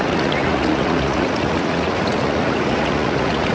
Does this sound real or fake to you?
fake